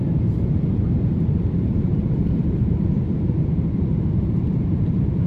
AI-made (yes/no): yes